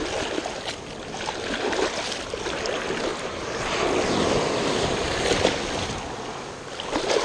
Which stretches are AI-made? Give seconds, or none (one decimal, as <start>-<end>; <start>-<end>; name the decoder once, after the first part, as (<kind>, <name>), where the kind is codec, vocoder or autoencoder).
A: none